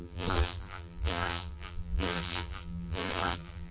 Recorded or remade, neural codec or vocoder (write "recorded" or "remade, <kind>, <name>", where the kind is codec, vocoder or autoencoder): remade, vocoder, BigVGAN v2